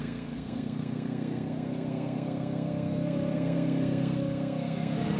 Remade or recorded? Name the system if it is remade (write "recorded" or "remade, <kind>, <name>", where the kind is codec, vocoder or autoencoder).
remade, codec, SNAC